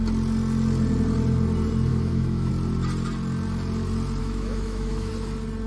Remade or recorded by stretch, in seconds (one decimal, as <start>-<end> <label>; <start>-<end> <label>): 0.0-1.9 recorded; 1.9-2.5 remade; 2.5-4.2 recorded; 4.2-5.1 remade; 5.1-5.7 recorded